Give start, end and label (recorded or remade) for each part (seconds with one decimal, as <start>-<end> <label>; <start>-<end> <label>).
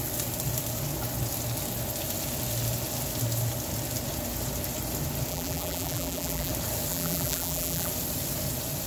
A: 0.0-5.3 recorded; 5.3-6.5 remade; 6.5-6.9 recorded; 6.9-7.9 remade; 7.9-8.9 recorded